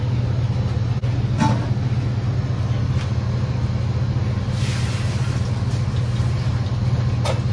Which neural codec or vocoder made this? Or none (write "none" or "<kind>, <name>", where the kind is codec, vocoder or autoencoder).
none